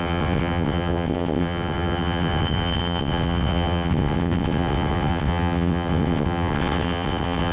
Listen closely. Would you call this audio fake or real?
fake